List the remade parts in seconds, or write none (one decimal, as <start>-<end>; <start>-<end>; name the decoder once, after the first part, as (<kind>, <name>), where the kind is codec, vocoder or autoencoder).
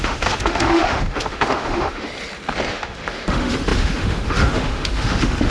0.0-2.1 (autoencoder, DAC-VAE); 2.7-5.5